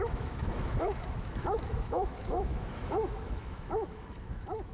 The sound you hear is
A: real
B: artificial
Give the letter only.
B